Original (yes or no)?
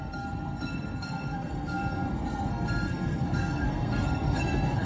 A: no